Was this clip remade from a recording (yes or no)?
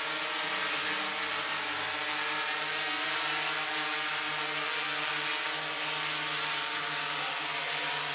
no